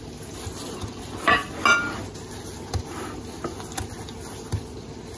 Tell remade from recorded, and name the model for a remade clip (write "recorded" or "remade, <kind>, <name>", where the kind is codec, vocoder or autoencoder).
recorded